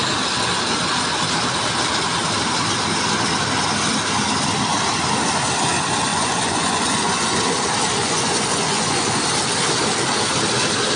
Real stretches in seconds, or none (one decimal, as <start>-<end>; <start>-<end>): 0.0-6.1; 7.4-8.0; 9.2-11.0